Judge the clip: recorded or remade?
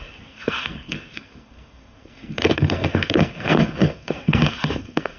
remade